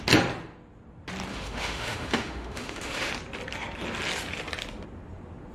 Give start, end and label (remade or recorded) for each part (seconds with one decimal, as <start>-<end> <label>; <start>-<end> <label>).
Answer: 0.0-1.3 recorded; 1.3-3.1 remade; 3.1-5.5 recorded